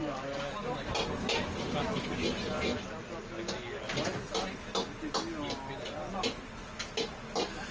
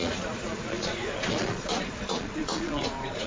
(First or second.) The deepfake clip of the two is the second